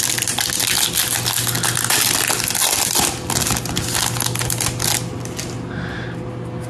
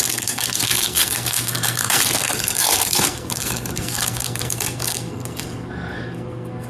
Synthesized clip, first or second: second